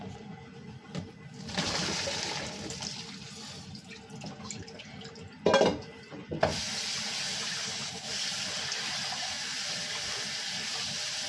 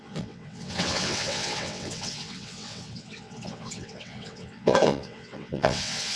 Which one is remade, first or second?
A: second